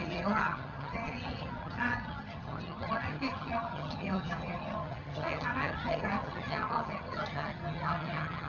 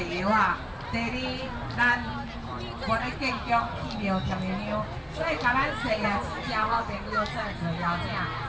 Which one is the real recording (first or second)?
second